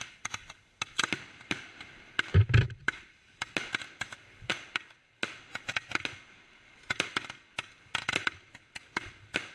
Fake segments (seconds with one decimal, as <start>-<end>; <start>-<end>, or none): none